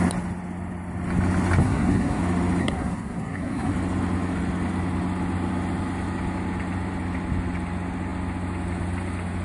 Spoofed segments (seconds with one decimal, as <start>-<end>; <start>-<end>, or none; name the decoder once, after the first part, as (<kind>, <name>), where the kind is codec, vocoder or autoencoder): 1.6-2.2 (codec, SNAC); 2.6-3.7